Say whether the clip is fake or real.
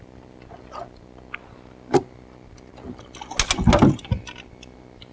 real